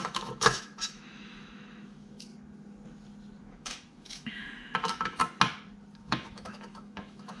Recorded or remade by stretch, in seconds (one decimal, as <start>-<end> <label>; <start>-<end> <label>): 0.0-2.3 remade; 2.3-3.4 recorded; 3.4-5.2 remade; 5.2-6.0 recorded; 6.0-7.4 remade